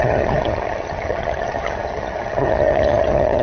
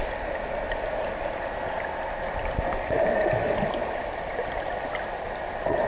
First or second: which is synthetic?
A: first